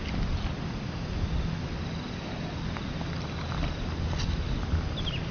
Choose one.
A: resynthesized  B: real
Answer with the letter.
B